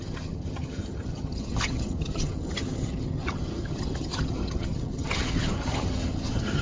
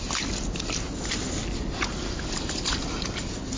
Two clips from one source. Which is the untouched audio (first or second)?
second